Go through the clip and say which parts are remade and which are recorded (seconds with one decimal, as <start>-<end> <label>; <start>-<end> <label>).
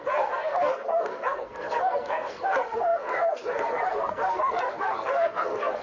0.0-5.8 remade